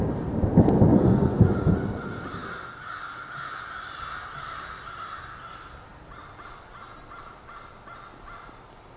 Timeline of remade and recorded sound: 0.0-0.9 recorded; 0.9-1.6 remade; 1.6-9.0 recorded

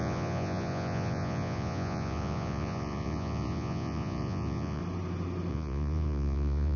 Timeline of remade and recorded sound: 0.0-4.8 remade; 4.8-5.5 recorded; 5.5-6.8 remade